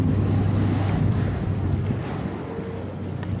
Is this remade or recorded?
recorded